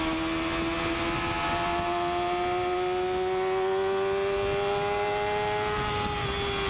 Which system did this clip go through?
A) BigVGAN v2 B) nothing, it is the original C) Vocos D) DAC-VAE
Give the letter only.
B